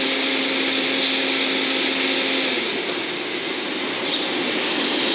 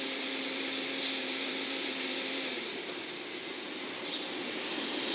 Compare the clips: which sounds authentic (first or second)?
first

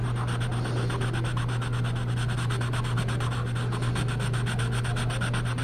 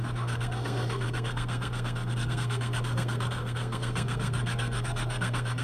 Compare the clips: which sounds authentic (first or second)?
first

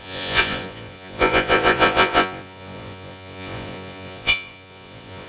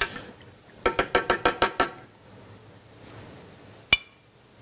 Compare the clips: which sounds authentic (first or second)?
second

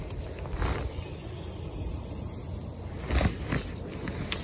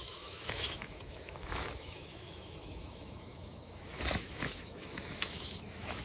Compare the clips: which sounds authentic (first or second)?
first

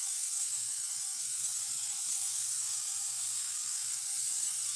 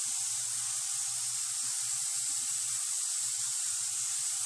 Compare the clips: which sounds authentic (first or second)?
second